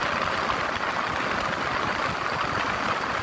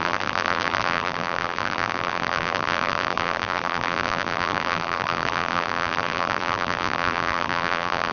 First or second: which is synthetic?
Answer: second